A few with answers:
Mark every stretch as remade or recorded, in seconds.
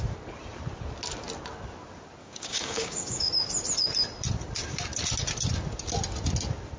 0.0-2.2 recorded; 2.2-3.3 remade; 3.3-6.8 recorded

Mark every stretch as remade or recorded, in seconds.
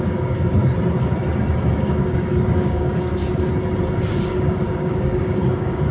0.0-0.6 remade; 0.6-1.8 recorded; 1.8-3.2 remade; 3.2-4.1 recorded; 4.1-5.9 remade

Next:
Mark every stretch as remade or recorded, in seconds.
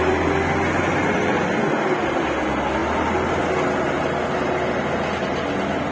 0.0-5.9 recorded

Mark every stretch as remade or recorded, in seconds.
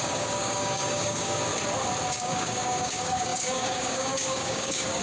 0.0-1.5 remade; 1.5-2.1 recorded; 2.1-5.0 remade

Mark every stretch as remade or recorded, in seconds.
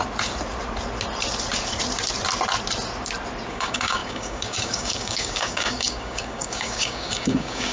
0.0-3.5 recorded; 3.5-7.7 remade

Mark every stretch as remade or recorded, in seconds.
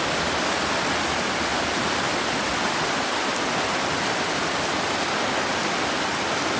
0.0-6.6 recorded